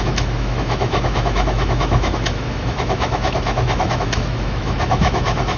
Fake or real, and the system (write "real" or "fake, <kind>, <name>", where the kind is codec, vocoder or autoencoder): fake, autoencoder, DAC-VAE